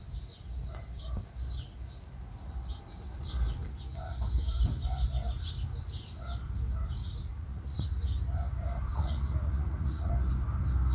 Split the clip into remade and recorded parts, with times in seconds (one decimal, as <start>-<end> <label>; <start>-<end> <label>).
0.0-7.0 recorded; 7.0-7.9 remade; 7.9-8.9 recorded; 8.9-10.1 remade; 10.1-10.9 recorded